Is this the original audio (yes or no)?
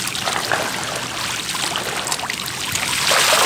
yes